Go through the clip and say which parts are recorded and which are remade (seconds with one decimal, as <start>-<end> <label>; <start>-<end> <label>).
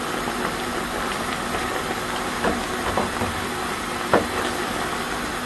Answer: 0.0-0.7 recorded; 0.7-1.4 remade; 1.4-5.5 recorded